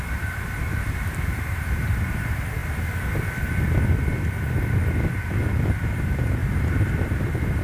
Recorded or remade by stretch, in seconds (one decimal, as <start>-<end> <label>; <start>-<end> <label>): 0.0-2.6 remade; 2.6-5.9 recorded; 5.9-6.4 remade; 6.4-6.9 recorded; 6.9-7.6 remade